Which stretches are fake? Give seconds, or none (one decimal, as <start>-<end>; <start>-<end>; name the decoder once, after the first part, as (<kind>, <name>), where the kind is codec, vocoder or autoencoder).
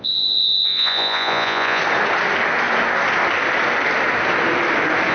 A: 0.0-1.8 (vocoder, Vocos)